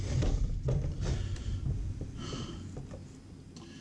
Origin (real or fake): real